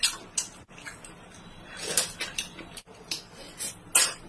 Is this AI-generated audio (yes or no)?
no